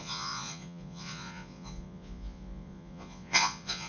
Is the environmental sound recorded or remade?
remade